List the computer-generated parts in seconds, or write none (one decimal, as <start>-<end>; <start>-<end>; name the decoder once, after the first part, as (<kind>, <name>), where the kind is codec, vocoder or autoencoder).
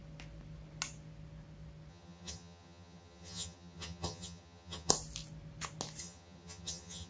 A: 1.9-4.9 (vocoder, HiFi-GAN); 6.0-7.1